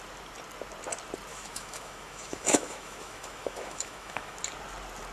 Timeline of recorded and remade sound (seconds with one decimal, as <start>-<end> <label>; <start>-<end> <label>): 0.0-1.3 recorded; 1.3-4.4 remade; 4.4-5.1 recorded